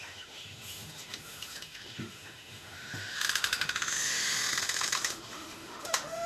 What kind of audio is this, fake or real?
fake